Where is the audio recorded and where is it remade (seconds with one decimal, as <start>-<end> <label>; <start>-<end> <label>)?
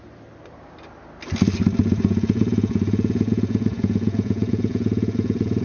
0.0-1.8 recorded; 1.8-5.6 remade